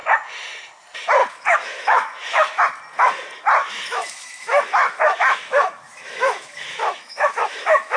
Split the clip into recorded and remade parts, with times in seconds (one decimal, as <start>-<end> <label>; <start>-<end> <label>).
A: 0.0-1.2 recorded; 1.2-2.6 remade; 2.6-3.6 recorded; 3.6-8.0 remade

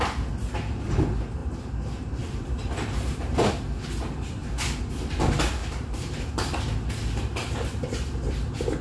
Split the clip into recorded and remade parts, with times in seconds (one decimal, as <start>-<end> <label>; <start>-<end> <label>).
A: 0.0-1.4 recorded; 1.4-3.5 remade; 3.5-5.6 recorded; 5.6-6.2 remade; 6.2-8.8 recorded

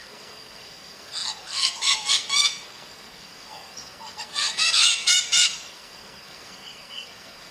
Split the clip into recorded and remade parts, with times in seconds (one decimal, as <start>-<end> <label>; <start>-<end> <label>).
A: 0.0-7.5 remade

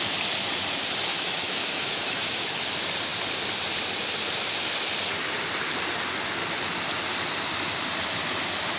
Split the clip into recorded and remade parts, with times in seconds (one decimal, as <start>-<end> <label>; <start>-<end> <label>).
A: 0.0-1.1 recorded; 1.1-2.7 remade; 2.7-8.8 recorded

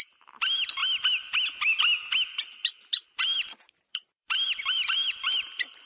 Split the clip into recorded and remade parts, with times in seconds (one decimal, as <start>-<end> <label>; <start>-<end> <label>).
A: 0.0-2.4 recorded; 2.4-5.9 remade

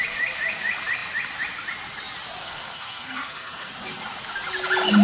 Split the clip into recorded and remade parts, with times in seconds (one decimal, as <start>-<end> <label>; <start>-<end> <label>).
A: 0.0-2.4 recorded; 2.4-3.7 remade; 3.7-5.0 recorded

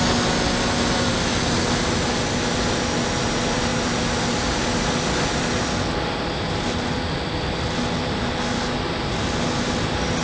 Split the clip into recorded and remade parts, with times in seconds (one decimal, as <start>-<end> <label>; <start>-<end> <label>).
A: 0.0-10.2 recorded

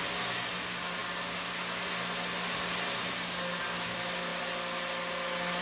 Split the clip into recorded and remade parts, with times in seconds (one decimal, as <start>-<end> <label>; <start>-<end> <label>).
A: 0.0-5.6 recorded